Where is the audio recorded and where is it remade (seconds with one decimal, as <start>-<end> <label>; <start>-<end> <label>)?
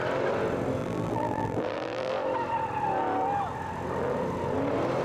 0.0-0.8 recorded; 0.8-2.1 remade; 2.1-5.0 recorded